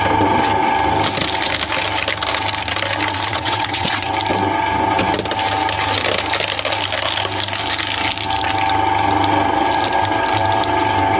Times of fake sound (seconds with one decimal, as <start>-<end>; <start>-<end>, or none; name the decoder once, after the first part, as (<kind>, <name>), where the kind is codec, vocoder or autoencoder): 3.3-4.1 (vocoder, WaveNeXt)